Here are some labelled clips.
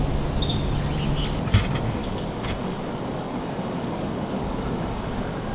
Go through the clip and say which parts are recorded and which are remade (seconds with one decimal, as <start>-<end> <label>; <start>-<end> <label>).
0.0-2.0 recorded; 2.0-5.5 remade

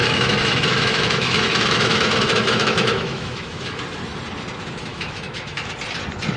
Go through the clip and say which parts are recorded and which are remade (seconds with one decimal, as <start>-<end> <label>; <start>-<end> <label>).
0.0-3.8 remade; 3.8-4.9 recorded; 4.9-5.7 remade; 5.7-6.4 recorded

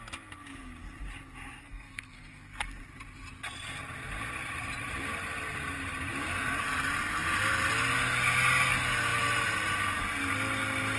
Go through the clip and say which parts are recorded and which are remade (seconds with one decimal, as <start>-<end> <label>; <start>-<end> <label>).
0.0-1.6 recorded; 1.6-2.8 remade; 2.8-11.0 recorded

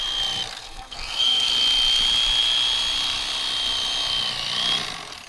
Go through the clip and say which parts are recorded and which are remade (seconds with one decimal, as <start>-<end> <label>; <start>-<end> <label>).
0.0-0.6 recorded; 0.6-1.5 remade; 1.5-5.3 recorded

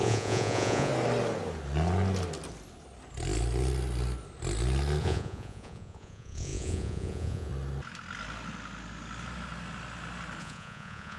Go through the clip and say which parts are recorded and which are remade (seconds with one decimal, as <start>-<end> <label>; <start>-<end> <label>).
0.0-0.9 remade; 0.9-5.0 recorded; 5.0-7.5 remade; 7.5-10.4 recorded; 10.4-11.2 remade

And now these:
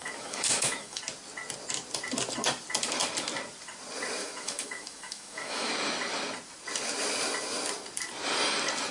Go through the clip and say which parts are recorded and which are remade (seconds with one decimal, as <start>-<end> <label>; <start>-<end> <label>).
0.0-1.0 remade; 1.0-4.2 recorded; 4.2-5.7 remade; 5.7-8.9 recorded

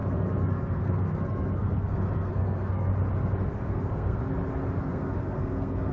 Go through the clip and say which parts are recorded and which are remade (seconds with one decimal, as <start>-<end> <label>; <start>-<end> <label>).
0.0-2.9 remade; 2.9-3.7 recorded; 3.7-4.2 remade; 4.2-4.8 recorded; 4.8-5.9 remade